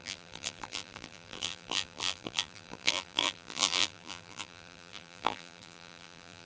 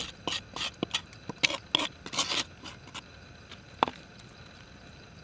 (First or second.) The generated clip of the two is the first